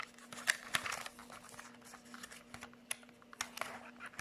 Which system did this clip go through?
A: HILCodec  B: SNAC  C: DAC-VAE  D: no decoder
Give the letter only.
D